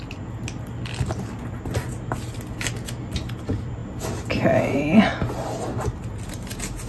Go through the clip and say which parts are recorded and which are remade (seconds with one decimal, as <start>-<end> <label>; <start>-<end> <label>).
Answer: 0.0-6.9 recorded